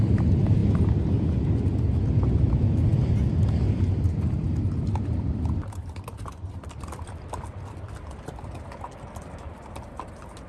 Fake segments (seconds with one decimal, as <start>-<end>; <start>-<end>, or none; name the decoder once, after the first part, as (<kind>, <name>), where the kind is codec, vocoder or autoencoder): 0.0-0.6 (vocoder, BigVGAN v2); 2.5-2.9; 4.8-10.5